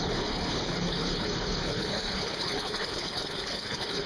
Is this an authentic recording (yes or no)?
no